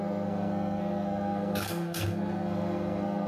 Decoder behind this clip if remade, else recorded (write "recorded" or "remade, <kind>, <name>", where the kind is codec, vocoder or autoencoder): remade, codec, SNAC